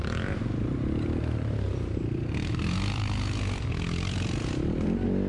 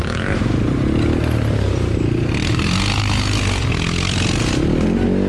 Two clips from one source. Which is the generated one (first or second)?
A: first